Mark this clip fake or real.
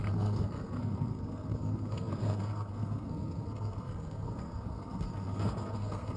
fake